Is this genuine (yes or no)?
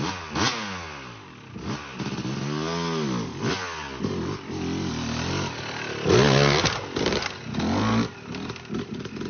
yes